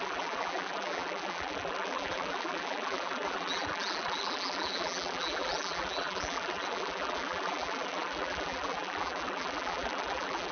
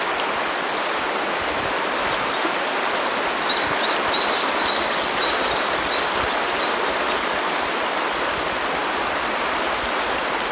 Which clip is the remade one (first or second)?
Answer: first